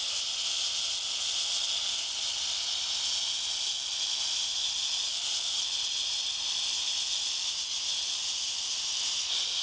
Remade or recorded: recorded